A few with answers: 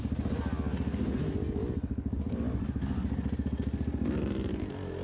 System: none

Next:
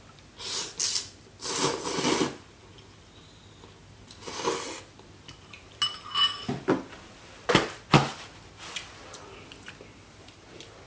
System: none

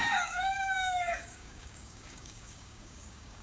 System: codec, DAC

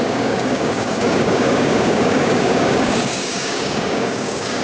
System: codec, DAC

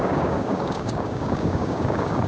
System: codec, DAC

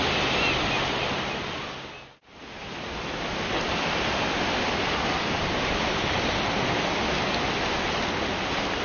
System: none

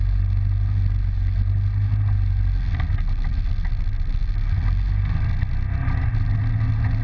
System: none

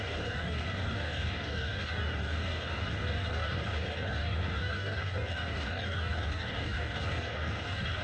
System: codec, DAC